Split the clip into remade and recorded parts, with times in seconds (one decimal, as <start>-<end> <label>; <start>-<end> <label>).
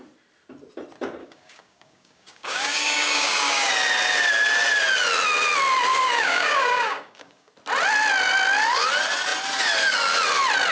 0.0-1.2 recorded; 1.2-3.7 remade; 3.7-5.9 recorded; 5.9-7.5 remade; 7.5-10.7 recorded